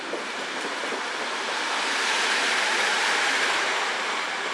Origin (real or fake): fake